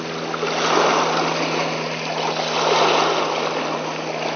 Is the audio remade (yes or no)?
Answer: no